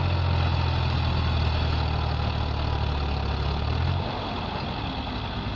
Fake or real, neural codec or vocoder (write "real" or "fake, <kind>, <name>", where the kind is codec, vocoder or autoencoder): real